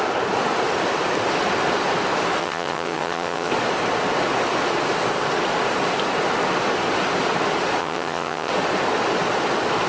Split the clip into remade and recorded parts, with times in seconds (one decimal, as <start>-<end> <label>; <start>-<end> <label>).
0.0-2.4 recorded; 2.4-3.5 remade; 3.5-7.8 recorded; 7.8-8.5 remade; 8.5-9.9 recorded